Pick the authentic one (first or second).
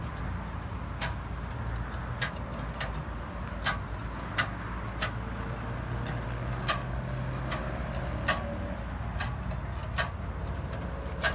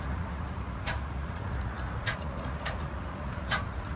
first